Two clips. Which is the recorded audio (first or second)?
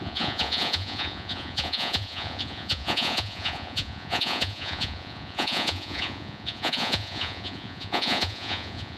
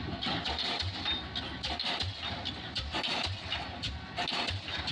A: second